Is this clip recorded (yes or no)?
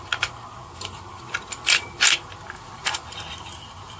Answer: yes